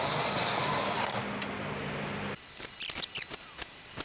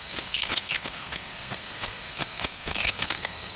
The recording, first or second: first